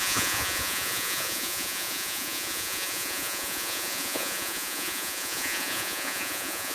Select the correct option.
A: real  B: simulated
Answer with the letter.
B